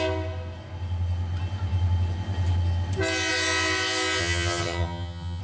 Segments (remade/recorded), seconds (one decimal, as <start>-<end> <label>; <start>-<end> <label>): 0.0-4.2 recorded; 4.2-5.4 remade